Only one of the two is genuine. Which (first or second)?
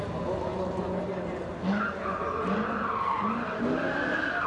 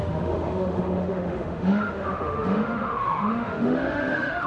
first